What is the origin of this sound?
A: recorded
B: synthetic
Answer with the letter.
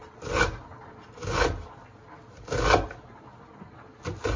A